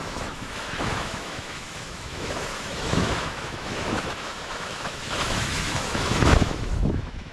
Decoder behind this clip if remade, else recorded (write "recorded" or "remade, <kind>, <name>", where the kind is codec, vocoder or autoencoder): remade, autoencoder, DAC-VAE